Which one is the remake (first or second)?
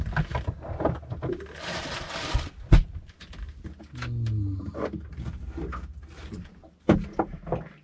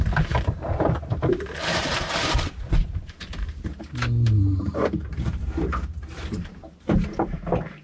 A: second